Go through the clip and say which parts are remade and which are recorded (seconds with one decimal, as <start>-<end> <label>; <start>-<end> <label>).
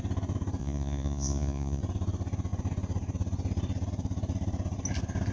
0.0-0.6 recorded; 0.6-1.8 remade; 1.8-5.3 recorded